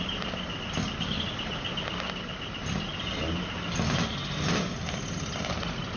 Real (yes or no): yes